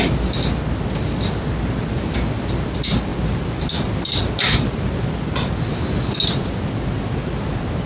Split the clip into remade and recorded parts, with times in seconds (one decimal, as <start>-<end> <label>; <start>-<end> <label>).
0.0-7.9 recorded

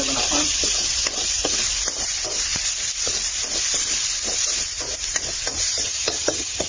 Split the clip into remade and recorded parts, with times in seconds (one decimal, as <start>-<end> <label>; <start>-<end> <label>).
0.0-5.7 recorded; 5.7-6.7 remade

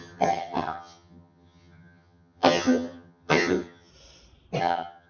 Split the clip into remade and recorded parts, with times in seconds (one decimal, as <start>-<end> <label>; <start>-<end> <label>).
0.0-3.9 remade; 3.9-4.6 recorded; 4.6-5.1 remade

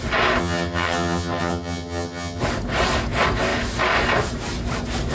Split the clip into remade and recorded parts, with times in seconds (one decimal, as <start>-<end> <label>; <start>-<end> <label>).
0.0-0.4 recorded; 0.4-2.4 remade; 2.4-5.1 recorded

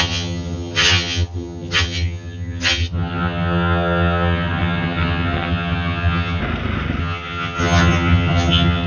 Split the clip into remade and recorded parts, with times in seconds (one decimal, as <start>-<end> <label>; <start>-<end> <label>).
0.0-6.4 remade; 6.4-7.0 recorded; 7.0-8.9 remade

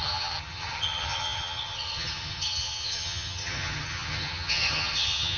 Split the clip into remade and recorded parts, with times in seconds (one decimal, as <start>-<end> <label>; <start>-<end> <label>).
0.0-5.4 remade

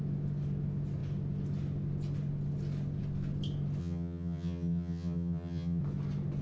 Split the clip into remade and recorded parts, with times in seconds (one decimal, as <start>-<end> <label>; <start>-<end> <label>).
0.0-3.8 recorded; 3.8-5.8 remade; 5.8-6.4 recorded

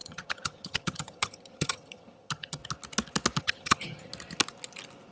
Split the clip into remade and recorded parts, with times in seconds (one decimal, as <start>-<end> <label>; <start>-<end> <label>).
0.0-2.6 remade; 2.6-3.4 recorded; 3.4-4.1 remade; 4.1-5.1 recorded